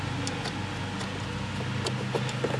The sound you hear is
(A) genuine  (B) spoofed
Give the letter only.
A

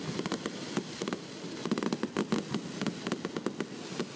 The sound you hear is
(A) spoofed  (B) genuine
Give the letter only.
B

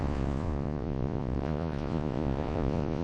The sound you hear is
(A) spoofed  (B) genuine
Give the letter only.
A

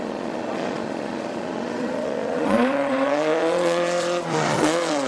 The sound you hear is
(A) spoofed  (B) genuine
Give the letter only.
A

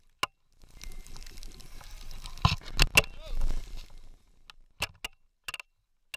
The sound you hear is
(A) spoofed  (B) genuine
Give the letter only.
B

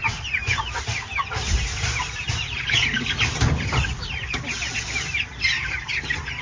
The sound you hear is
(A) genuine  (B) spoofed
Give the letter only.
A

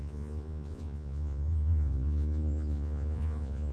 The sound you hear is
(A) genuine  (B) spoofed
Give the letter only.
B